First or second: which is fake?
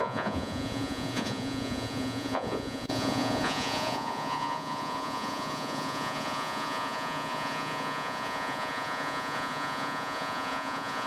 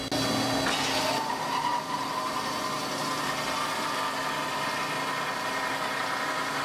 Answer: first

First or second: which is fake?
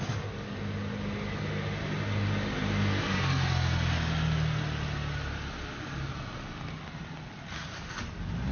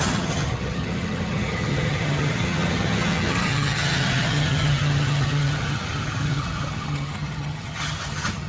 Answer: second